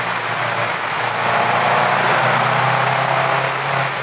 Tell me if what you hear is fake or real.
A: real